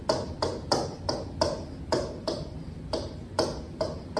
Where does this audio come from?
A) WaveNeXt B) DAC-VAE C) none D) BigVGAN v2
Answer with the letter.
C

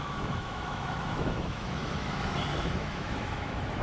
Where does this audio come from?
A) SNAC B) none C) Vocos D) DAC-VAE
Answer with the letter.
D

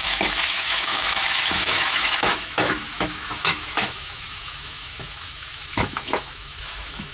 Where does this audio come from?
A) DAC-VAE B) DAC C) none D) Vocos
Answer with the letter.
A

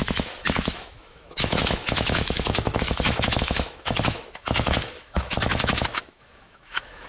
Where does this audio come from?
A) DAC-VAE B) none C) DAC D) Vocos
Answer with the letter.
A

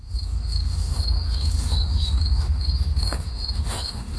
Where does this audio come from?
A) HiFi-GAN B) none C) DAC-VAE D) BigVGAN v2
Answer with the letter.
C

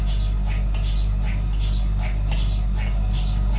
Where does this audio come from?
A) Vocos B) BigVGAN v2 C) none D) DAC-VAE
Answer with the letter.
C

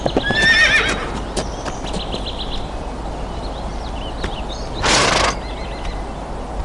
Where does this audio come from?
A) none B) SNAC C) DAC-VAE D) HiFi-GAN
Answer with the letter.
A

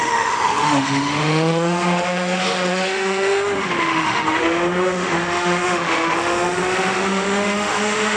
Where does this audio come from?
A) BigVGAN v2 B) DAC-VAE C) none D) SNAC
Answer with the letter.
B